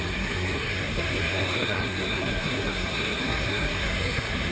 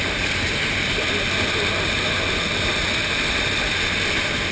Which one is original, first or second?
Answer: second